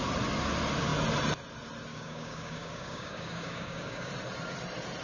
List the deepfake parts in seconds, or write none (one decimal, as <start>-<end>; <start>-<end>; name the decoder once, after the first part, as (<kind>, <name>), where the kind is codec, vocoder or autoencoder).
1.9-4.1 (codec, DAC)